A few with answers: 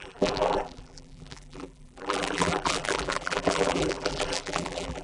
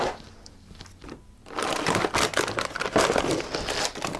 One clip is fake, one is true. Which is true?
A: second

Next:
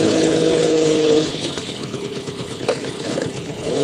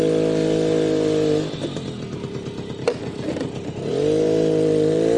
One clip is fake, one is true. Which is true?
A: second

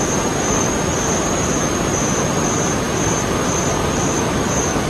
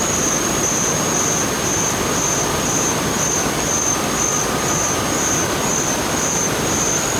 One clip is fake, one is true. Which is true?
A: second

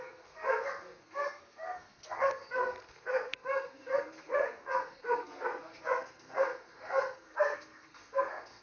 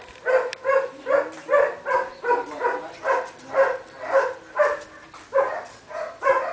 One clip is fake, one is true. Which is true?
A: second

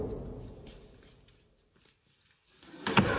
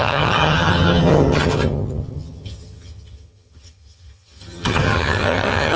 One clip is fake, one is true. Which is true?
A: first